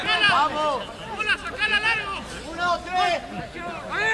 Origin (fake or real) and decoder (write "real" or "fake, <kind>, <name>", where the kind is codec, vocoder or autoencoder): real